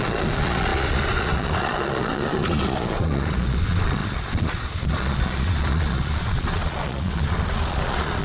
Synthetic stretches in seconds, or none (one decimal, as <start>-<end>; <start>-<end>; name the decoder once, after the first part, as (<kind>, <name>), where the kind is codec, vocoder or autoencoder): 0.0-8.2 (vocoder, Vocos)